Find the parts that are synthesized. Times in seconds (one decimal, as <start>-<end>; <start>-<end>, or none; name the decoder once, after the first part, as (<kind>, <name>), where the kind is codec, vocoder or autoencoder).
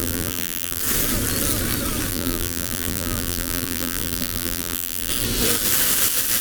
0.0-0.8 (vocoder, BigVGAN v2); 2.1-5.1